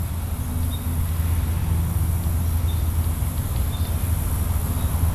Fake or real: real